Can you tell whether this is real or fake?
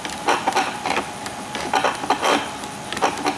real